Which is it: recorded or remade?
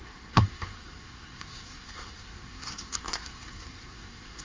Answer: remade